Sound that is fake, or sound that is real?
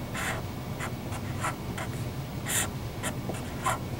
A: real